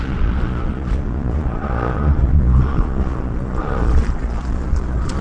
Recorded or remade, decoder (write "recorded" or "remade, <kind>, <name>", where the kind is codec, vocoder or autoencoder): remade, vocoder, Vocos